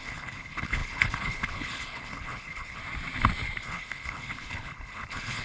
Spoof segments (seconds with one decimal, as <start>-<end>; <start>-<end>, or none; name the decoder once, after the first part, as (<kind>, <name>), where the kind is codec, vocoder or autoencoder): 0.0-2.8 (codec, HILCodec); 3.6-5.4